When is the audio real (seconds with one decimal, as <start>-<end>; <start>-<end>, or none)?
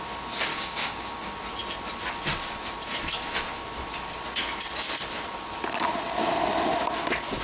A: 0.0-0.5; 1.2-7.4